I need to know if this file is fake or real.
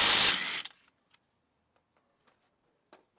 real